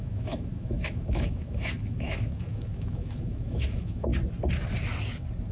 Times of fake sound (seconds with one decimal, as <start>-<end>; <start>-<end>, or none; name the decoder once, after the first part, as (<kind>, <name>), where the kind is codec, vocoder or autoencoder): 0.0-4.1 (autoencoder, DAC-VAE)